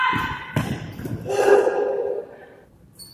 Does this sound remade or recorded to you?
recorded